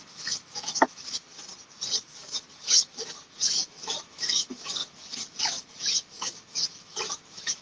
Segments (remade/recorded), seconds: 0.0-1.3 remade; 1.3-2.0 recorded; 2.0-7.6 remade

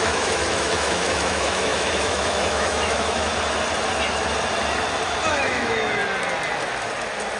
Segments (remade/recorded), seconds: 0.0-3.3 remade; 3.3-5.3 recorded; 5.3-6.0 remade; 6.0-7.4 recorded

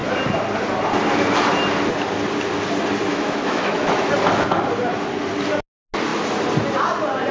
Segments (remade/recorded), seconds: 0.0-3.1 recorded; 3.1-4.1 remade; 4.1-7.3 recorded